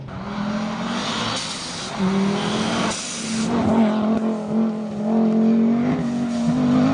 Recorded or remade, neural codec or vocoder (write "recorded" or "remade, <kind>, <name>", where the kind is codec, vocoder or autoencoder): recorded